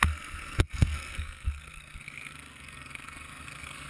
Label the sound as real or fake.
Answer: fake